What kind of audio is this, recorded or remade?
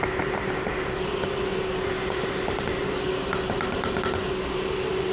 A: recorded